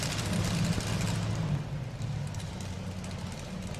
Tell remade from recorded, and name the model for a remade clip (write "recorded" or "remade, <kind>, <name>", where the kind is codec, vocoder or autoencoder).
recorded